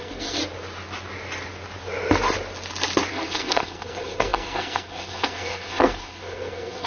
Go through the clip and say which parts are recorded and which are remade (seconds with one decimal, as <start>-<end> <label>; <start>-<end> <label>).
0.0-0.4 remade; 0.4-3.1 recorded; 3.1-6.9 remade